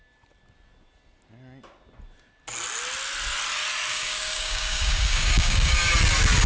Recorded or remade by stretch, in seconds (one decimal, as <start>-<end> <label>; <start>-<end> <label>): 0.0-3.9 recorded; 3.9-5.9 remade; 5.9-6.5 recorded